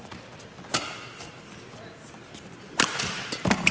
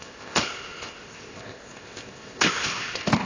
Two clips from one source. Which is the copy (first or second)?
second